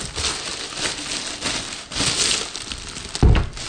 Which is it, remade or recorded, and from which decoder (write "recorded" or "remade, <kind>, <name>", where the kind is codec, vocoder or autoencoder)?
recorded